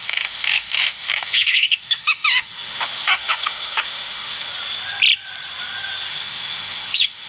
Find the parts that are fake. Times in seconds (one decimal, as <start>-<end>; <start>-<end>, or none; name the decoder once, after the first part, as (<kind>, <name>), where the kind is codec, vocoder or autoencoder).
0.0-4.5 (autoencoder, DAC-VAE); 6.1-7.3